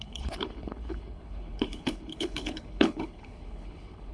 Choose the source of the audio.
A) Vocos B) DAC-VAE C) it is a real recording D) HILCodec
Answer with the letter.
D